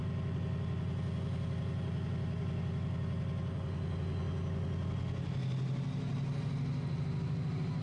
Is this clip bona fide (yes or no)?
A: yes